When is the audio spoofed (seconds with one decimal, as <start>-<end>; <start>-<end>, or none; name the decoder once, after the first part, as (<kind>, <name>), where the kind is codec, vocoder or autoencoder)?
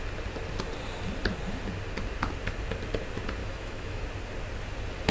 3.4-4.0 (autoencoder, DAC-VAE)